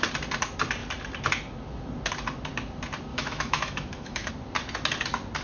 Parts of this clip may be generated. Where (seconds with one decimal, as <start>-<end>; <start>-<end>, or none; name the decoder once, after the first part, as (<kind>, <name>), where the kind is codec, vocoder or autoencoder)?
3.1-4.3 (autoencoder, DAC-VAE)